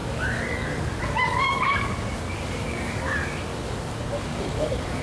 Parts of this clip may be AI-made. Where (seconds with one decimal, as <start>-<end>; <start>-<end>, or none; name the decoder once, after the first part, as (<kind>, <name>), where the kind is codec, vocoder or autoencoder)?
0.0-3.0 (codec, DAC); 3.5-5.0